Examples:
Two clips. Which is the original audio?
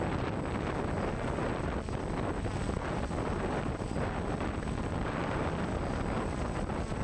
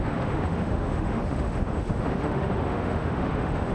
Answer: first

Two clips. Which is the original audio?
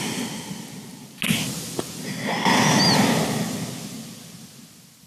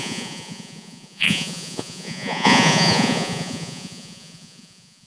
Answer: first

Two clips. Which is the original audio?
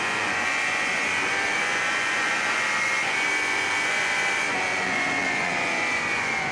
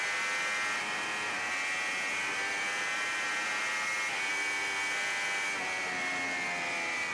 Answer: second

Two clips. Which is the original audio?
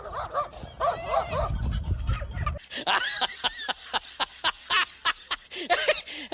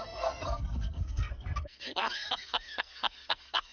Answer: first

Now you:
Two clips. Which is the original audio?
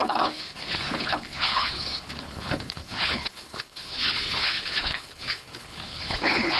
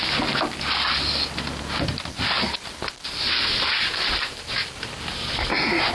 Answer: second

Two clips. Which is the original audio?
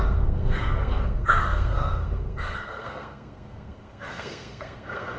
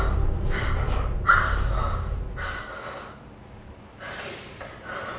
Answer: second